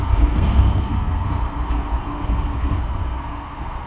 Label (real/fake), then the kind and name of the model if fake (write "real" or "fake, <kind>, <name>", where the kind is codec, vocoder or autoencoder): fake, codec, SNAC